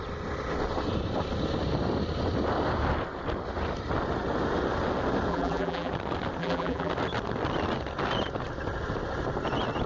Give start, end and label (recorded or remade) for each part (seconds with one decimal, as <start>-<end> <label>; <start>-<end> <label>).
0.0-5.3 recorded; 5.3-5.9 remade; 5.9-6.4 recorded; 6.4-6.9 remade; 6.9-9.9 recorded